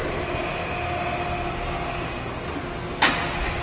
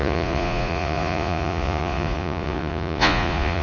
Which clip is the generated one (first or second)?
second